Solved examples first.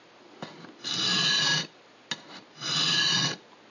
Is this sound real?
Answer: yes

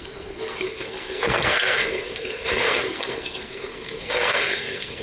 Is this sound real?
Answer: no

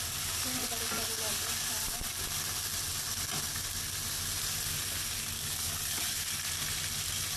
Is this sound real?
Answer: yes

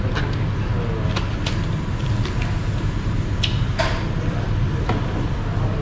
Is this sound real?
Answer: yes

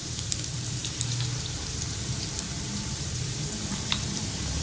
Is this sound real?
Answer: no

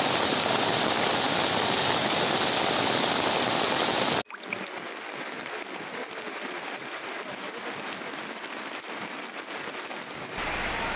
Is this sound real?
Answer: yes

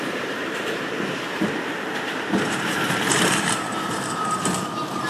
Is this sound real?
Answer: no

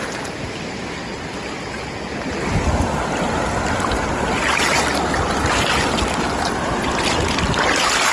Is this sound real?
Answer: yes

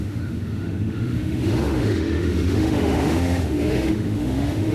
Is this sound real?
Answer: no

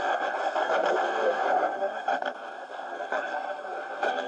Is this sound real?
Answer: no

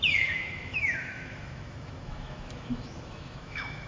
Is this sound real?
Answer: no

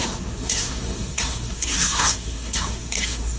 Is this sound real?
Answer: no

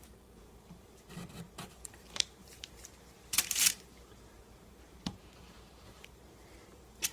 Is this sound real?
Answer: no